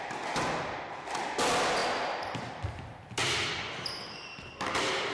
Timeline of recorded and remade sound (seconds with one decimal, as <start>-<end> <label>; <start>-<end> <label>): 0.0-5.1 recorded